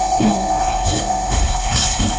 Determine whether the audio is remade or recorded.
remade